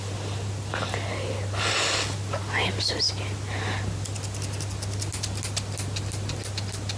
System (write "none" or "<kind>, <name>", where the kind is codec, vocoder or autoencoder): none